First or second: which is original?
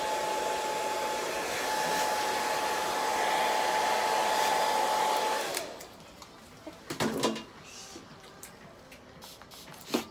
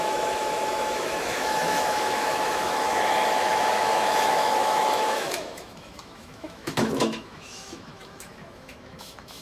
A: first